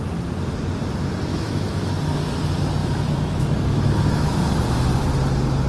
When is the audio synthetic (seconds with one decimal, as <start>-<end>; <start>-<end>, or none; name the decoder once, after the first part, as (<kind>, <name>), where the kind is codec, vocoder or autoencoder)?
1.3-1.9 (autoencoder, DAC-VAE); 2.8-4.5